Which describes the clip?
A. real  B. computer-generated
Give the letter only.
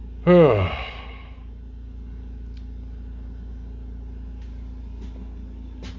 A